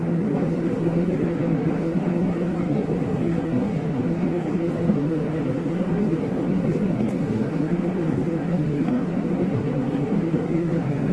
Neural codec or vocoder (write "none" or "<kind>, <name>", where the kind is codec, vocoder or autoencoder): codec, SNAC